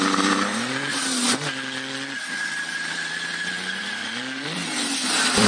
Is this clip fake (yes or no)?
yes